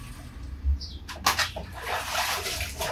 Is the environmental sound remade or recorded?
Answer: recorded